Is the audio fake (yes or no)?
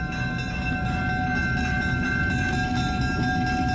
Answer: no